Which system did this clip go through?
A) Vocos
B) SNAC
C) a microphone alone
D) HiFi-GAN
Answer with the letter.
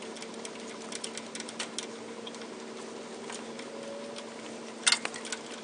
C